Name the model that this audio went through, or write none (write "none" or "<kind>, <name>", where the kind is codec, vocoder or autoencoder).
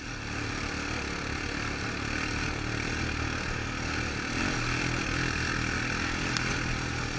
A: none